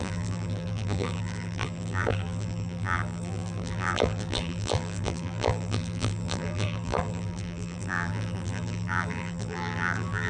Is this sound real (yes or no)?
no